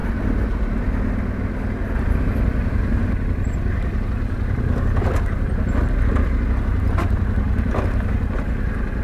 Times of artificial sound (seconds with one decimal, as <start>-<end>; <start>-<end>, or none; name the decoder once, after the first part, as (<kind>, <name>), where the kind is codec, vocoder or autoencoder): none